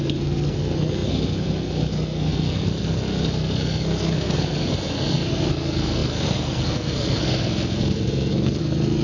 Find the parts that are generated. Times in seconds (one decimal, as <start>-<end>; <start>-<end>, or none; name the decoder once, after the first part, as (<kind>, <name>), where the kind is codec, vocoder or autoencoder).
0.0-9.0 (codec, SNAC)